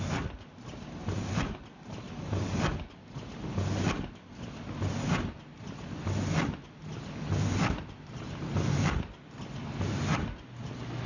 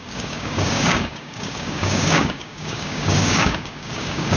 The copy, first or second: second